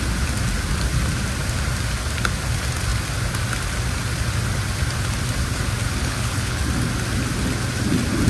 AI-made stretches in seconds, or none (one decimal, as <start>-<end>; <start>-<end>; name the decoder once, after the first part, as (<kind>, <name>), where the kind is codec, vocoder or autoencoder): 6.0-6.6 (codec, HILCodec)